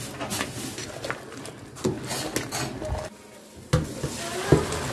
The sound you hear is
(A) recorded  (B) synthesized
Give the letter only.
A